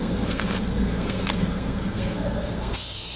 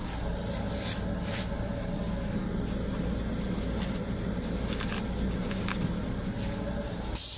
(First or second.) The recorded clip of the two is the second